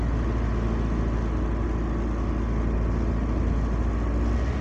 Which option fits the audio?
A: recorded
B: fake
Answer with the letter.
A